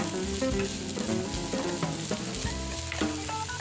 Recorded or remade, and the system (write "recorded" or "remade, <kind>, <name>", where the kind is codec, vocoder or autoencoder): recorded